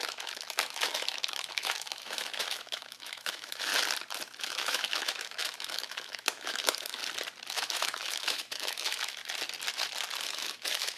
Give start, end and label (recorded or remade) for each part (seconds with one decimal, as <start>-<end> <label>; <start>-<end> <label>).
0.0-3.7 remade; 3.7-4.4 recorded; 4.4-7.0 remade; 7.0-7.5 recorded; 7.5-9.2 remade; 9.2-10.2 recorded; 10.2-11.0 remade